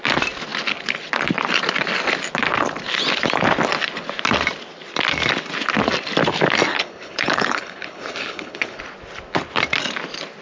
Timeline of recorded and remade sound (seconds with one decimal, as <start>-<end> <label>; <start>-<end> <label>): 0.0-6.7 recorded; 6.7-8.8 remade; 8.8-10.4 recorded